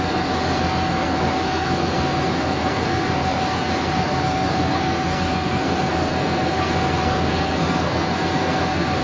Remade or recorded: remade